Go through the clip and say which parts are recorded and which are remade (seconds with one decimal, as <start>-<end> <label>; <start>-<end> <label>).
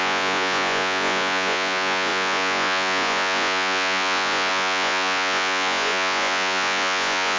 0.0-7.4 remade